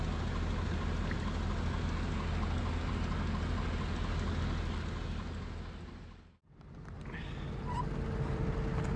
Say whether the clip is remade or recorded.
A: recorded